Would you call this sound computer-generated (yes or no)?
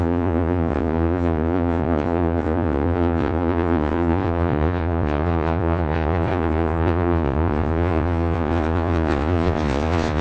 yes